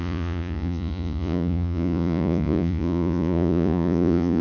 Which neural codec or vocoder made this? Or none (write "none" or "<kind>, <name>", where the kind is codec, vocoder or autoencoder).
vocoder, Vocos